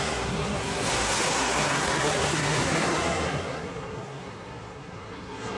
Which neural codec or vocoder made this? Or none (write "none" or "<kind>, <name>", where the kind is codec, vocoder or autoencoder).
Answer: codec, SNAC